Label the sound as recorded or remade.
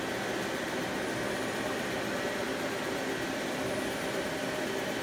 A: recorded